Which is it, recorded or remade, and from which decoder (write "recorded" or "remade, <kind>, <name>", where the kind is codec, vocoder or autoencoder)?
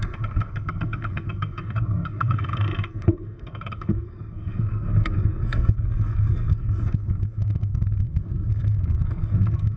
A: remade, codec, SNAC